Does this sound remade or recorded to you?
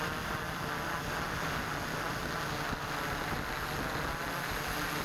recorded